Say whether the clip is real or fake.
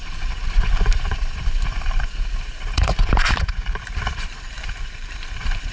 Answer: fake